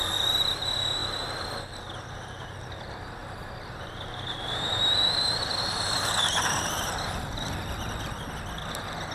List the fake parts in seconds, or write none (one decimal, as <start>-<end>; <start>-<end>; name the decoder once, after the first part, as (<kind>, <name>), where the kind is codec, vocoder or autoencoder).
3.2-7.5 (vocoder, BigVGAN v2)